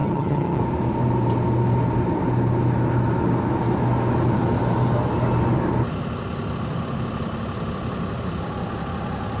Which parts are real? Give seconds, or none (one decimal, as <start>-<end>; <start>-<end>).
0.6-9.4